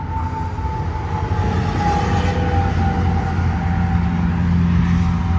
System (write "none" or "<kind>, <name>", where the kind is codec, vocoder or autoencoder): none